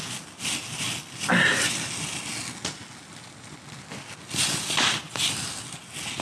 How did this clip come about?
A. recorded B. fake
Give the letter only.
A